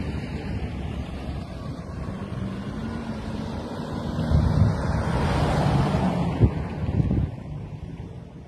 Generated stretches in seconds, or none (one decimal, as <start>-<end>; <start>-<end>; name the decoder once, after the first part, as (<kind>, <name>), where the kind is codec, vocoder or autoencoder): 0.5-2.2 (vocoder, BigVGAN v2)